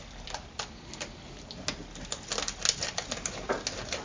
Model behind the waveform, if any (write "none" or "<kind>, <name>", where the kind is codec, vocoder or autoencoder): none